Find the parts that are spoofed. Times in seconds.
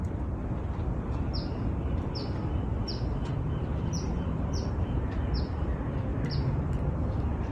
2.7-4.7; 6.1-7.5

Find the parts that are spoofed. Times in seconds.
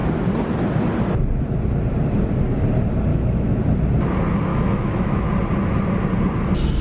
3.1-3.6; 4.5-5.3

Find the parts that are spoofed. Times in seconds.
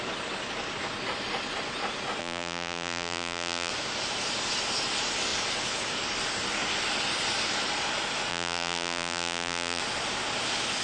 2.2-3.7; 8.3-9.8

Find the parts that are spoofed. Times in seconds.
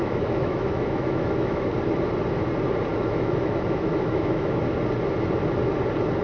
0.0-1.7; 2.9-4.6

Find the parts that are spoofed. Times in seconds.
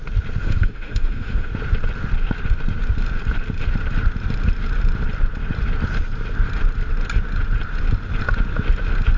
0.4-1.5